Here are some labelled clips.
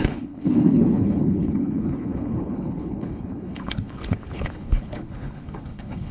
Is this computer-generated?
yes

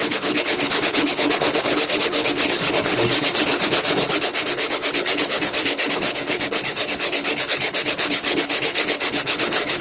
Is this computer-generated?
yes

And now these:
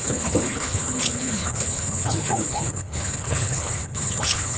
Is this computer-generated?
yes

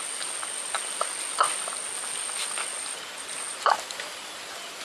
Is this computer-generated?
no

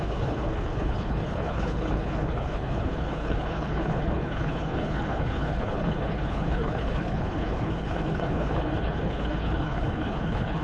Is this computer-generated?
yes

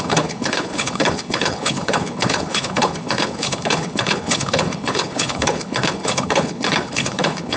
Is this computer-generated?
yes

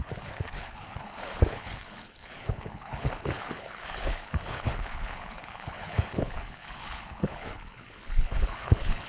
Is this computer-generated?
yes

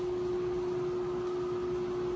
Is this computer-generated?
no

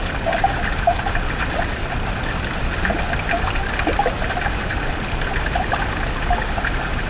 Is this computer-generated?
no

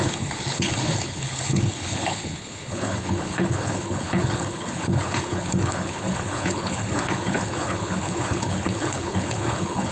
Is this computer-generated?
yes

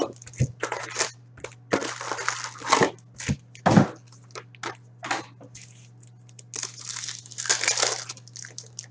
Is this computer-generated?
no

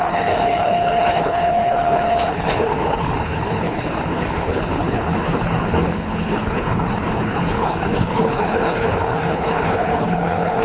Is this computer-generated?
yes